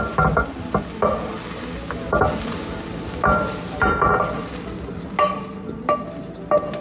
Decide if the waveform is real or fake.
real